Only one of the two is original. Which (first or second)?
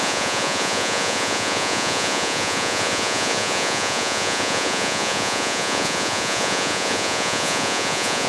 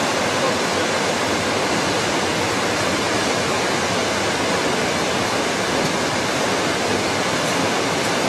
second